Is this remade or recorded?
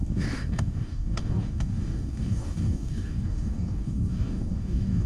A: remade